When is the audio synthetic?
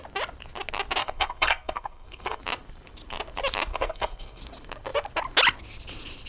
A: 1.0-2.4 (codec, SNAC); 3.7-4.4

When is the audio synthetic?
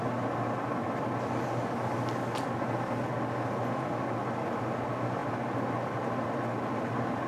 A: none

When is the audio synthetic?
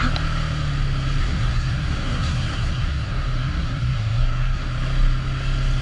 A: 1.2-4.7 (codec, SNAC)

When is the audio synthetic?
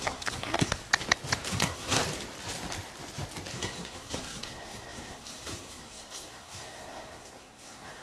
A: 0.0-0.8 (codec, SNAC); 1.5-2.0; 3.5-8.0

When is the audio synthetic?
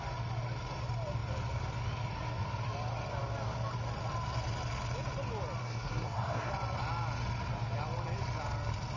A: 5.6-6.5 (codec, SNAC)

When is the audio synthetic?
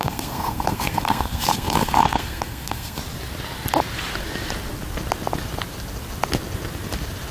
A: 0.0-3.0 (codec, SNAC)